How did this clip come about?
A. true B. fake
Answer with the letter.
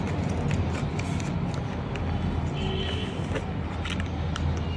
A